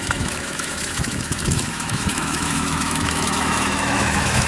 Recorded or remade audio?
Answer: remade